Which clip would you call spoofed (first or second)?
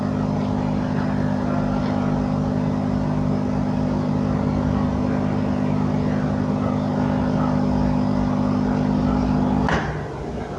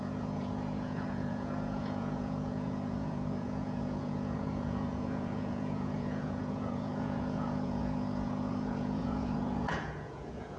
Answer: second